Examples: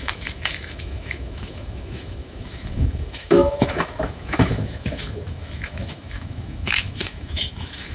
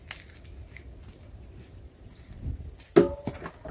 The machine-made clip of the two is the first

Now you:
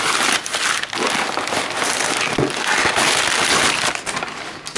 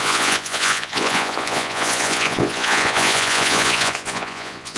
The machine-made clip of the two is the second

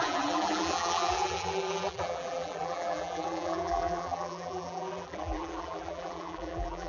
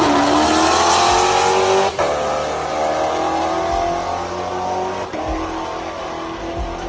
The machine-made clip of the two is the first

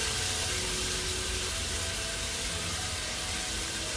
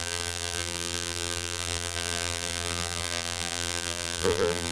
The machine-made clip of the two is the second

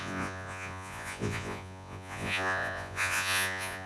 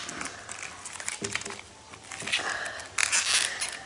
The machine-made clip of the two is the first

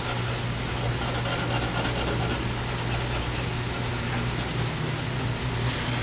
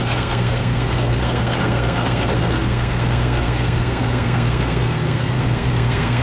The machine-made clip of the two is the second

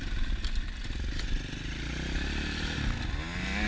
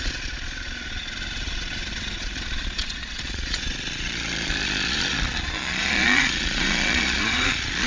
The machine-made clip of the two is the second